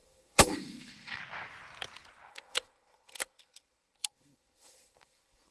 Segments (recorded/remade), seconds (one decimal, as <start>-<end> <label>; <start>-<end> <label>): 0.0-1.2 remade; 1.2-2.3 recorded; 2.3-5.5 remade